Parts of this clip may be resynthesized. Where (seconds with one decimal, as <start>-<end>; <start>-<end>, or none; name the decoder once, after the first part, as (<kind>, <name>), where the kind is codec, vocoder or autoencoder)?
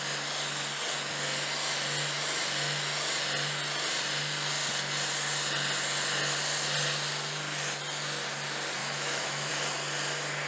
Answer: 8.8-9.5 (autoencoder, DAC-VAE)